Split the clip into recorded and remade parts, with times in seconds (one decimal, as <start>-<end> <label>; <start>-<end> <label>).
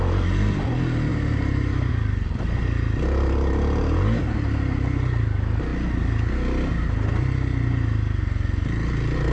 0.0-1.1 recorded; 1.1-1.9 remade; 1.9-9.3 recorded